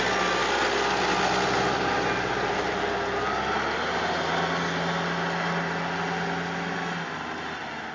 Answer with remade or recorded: recorded